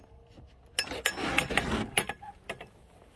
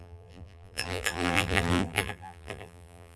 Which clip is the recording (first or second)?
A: first